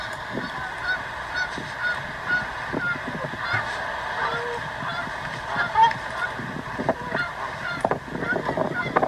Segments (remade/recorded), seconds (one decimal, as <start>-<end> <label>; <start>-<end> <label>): 0.0-4.9 recorded; 4.9-7.9 remade; 7.9-9.1 recorded